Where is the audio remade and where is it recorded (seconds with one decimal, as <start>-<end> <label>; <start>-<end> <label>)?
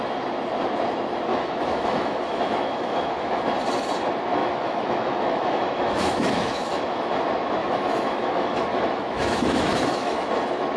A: 0.0-1.3 recorded; 1.3-3.4 remade; 3.4-4.4 recorded; 4.4-7.1 remade; 7.1-7.6 recorded; 7.6-10.3 remade; 10.3-10.8 recorded